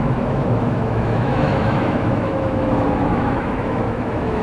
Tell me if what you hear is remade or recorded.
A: remade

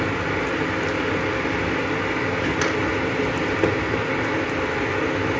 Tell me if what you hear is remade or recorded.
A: recorded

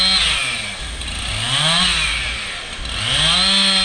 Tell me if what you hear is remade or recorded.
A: recorded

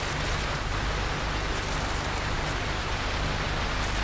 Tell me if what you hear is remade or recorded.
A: recorded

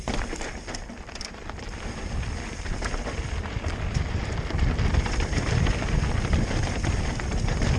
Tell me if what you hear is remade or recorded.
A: remade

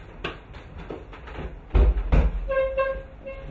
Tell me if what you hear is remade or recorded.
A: recorded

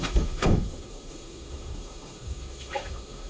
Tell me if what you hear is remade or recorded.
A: remade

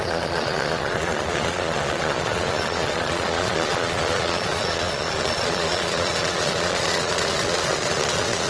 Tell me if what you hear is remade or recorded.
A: remade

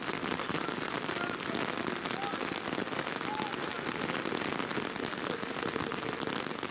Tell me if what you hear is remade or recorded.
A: recorded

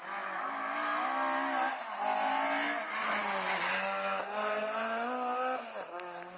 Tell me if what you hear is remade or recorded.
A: recorded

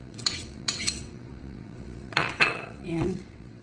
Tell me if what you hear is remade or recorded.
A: remade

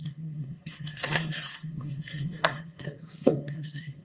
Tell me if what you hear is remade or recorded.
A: remade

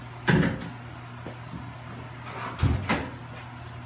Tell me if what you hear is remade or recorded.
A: recorded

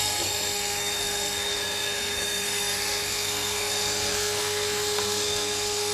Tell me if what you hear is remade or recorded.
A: remade